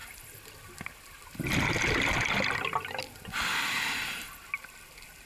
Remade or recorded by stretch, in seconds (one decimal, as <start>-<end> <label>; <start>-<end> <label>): 0.0-2.0 remade; 2.0-5.3 recorded